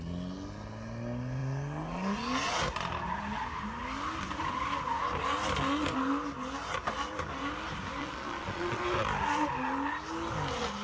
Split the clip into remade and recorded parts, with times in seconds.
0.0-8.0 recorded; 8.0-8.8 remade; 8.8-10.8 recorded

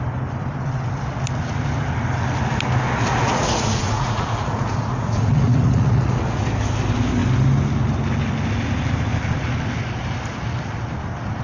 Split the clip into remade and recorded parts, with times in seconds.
0.0-3.1 recorded; 3.1-6.2 remade; 6.2-11.4 recorded

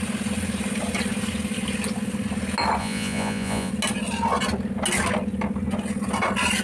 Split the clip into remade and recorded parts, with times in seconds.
0.0-2.8 recorded; 2.8-3.7 remade; 3.7-6.6 recorded